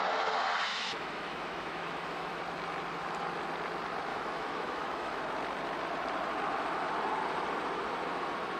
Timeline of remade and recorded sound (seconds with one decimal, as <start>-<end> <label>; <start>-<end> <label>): 0.0-0.7 recorded; 0.7-2.4 remade; 2.4-4.1 recorded; 4.1-5.2 remade; 5.2-8.6 recorded